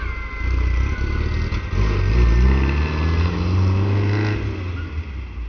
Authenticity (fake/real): real